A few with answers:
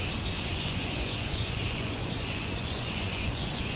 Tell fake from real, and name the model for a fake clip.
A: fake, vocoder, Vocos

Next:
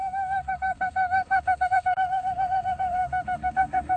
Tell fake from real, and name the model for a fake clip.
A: fake, codec, SNAC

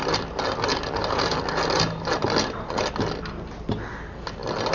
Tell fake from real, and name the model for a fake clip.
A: real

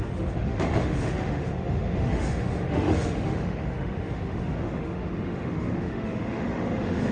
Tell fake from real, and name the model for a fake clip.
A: fake, autoencoder, DAC-VAE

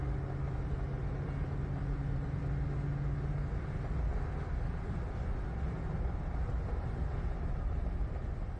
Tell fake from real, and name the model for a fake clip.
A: real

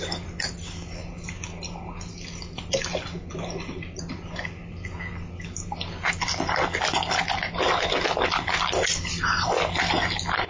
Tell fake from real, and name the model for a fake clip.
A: real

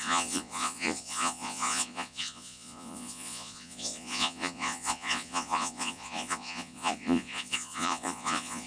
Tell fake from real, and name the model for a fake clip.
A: fake, vocoder, Vocos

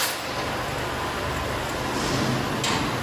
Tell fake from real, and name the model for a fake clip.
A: real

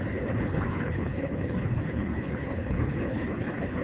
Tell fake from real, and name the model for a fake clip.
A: fake, codec, HILCodec